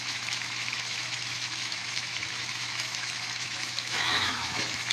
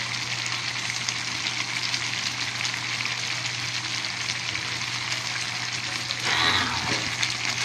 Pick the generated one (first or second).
first